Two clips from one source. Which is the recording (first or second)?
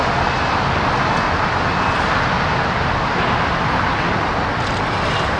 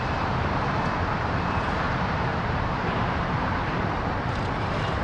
first